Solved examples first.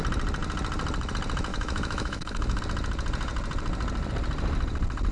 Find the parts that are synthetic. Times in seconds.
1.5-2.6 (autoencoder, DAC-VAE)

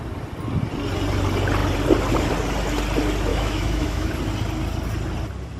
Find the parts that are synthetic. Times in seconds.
3.3-4.1 (autoencoder, DAC-VAE)

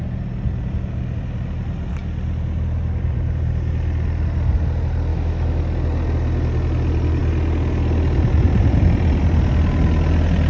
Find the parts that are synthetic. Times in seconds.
5.1-5.6 (autoencoder, DAC-VAE)